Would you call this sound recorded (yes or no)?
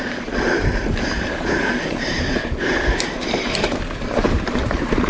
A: no